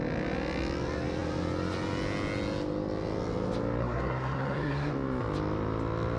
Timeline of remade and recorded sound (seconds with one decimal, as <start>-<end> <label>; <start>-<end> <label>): 0.0-3.8 recorded; 3.8-4.9 remade; 4.9-6.2 recorded